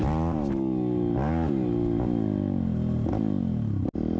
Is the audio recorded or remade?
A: recorded